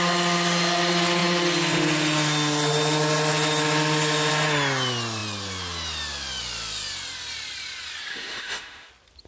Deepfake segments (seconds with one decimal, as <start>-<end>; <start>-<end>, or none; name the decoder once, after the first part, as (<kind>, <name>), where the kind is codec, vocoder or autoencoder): 8.1-8.9 (autoencoder, DAC-VAE)